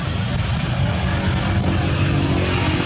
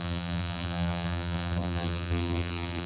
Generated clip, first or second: second